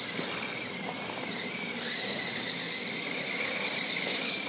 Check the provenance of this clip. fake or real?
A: real